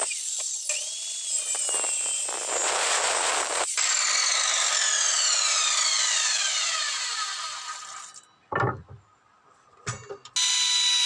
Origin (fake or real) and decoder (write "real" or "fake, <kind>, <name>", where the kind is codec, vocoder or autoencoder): real